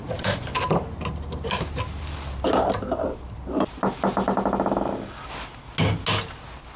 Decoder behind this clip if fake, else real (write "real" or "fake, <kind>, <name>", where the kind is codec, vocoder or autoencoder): real